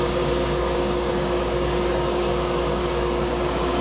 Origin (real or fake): fake